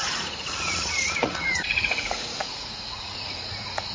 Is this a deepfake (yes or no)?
yes